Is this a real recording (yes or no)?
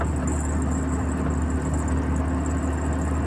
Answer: yes